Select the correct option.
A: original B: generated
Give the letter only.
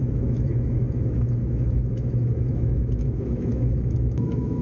B